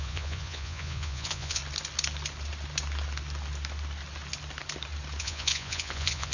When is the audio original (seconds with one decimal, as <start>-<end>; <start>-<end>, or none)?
1.6-5.2